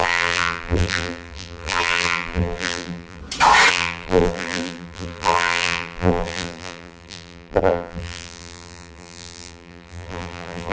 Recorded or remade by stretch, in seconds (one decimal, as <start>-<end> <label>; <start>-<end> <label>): 0.0-3.2 remade; 3.2-3.7 recorded; 3.7-10.7 remade